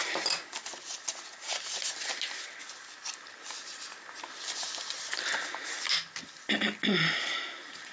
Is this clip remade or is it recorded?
recorded